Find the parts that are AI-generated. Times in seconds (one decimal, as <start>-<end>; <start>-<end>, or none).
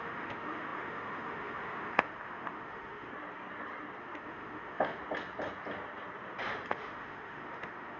0.0-3.1; 4.0-5.0; 6.7-8.0